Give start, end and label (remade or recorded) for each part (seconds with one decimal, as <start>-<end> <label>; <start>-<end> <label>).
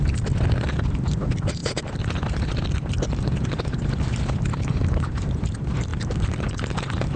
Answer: 0.0-7.2 remade